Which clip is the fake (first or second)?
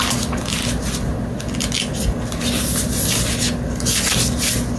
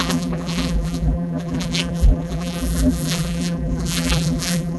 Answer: second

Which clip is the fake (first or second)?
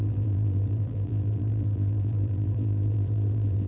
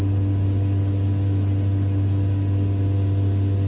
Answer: first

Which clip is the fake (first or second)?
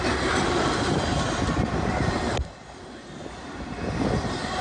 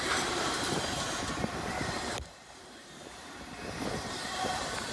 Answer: second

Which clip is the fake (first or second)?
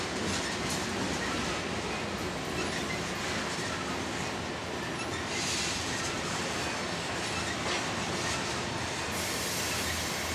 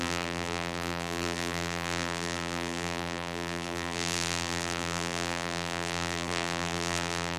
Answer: second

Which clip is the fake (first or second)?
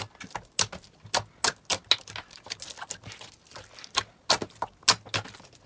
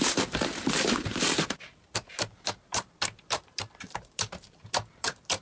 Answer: second